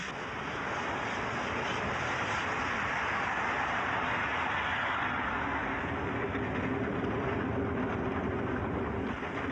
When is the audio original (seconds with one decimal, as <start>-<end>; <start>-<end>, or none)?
0.0-9.5